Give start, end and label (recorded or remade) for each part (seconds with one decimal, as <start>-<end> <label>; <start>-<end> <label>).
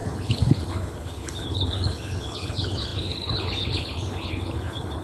0.0-5.0 remade